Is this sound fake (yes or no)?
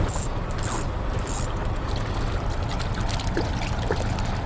no